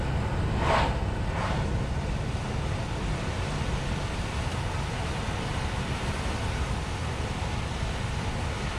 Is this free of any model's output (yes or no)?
yes